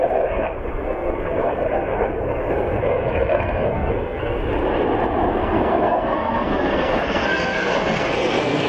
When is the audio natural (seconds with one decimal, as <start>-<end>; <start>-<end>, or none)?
4.4-5.3